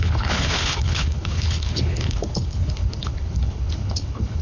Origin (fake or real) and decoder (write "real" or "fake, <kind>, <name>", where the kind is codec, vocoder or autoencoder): fake, codec, HILCodec